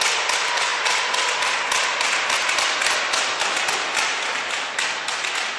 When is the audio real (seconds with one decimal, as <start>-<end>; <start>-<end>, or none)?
0.0-5.6